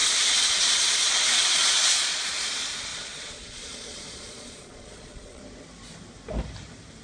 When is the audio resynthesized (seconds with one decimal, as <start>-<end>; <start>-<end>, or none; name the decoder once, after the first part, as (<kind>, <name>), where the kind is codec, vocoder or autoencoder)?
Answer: 0.0-2.2 (vocoder, Vocos); 2.9-5.4